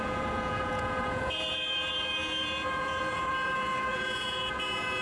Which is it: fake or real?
fake